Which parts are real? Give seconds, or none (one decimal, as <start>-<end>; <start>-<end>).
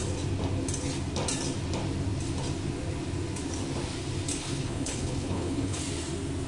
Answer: 0.0-4.4; 5.8-6.5